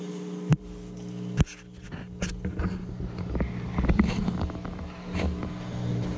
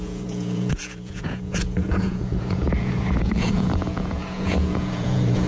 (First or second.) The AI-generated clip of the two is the second